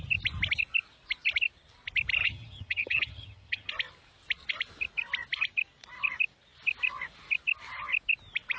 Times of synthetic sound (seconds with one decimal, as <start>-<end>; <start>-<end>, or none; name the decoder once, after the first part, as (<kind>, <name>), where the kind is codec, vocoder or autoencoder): 2.2-3.7 (vocoder, HiFi-GAN)